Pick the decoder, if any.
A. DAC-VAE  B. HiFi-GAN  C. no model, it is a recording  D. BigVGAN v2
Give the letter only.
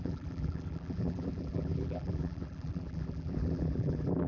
D